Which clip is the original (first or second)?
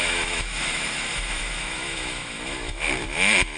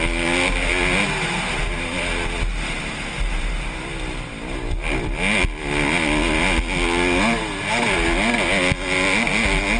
second